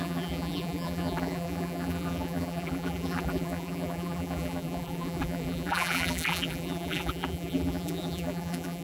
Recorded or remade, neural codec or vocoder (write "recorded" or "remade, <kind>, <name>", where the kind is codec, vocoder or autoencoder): remade, vocoder, BigVGAN v2